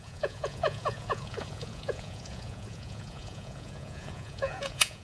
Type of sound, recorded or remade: remade